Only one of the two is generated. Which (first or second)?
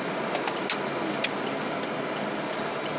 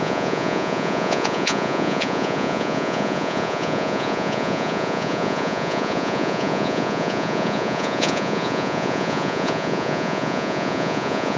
second